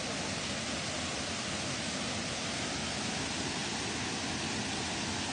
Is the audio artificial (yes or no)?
no